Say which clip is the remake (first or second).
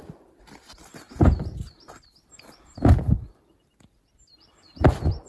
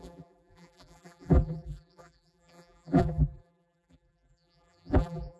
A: second